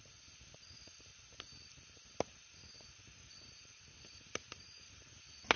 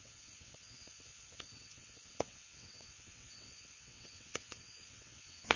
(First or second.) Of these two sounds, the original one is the first